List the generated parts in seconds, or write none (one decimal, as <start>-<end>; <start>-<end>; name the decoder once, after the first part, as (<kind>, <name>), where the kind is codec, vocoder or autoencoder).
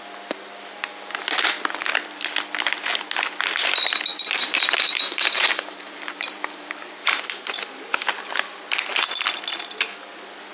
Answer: 4.1-7.6 (vocoder, BigVGAN v2)